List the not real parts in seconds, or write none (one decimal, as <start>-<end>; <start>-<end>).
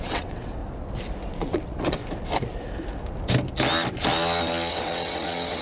0.0-0.6; 1.3-2.0; 4.7-5.6